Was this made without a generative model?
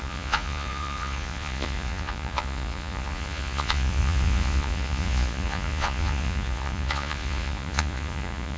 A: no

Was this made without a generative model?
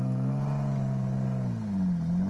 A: yes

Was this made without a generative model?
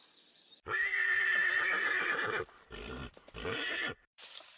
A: no